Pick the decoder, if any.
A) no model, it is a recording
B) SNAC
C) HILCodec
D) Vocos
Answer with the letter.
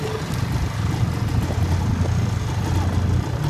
A